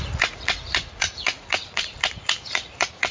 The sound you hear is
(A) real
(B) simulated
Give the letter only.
B